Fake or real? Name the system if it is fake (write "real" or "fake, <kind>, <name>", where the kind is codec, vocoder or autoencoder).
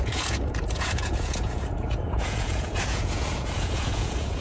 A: fake, vocoder, Vocos